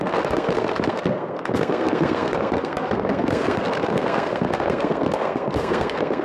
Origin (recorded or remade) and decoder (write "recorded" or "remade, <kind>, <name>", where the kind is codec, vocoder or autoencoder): remade, codec, SNAC